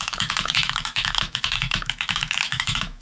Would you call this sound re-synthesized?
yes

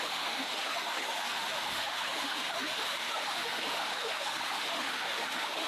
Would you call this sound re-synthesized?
yes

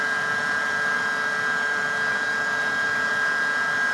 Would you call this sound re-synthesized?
no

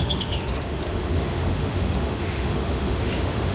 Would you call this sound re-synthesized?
yes